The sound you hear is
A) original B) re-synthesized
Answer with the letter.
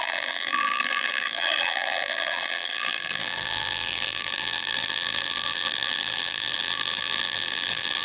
B